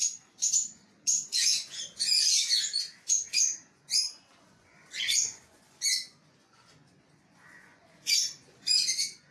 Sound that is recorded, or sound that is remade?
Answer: remade